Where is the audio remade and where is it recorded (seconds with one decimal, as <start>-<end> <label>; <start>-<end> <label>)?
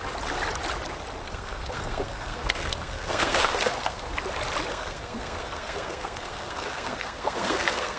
0.0-1.2 recorded; 1.2-4.1 remade; 4.1-4.7 recorded; 4.7-8.0 remade